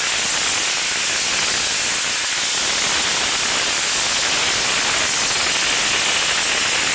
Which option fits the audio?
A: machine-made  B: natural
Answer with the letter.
B